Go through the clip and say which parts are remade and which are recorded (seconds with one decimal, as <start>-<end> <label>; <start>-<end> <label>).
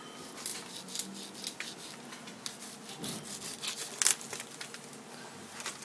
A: 0.0-5.8 recorded